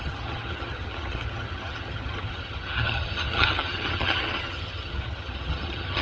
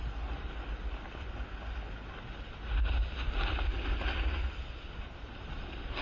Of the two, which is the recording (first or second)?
second